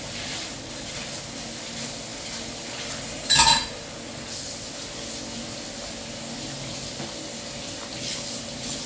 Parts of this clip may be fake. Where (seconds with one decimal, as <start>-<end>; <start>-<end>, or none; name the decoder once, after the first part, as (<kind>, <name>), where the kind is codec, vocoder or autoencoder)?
none